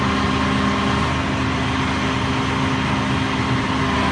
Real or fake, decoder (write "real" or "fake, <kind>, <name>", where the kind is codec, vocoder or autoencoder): real